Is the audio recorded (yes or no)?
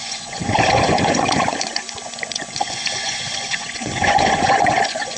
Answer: no